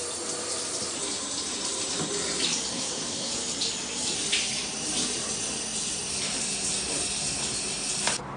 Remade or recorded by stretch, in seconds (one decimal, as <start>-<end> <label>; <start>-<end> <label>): 0.0-2.7 recorded; 2.7-3.3 remade; 3.3-8.4 recorded